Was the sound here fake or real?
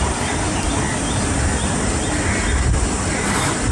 real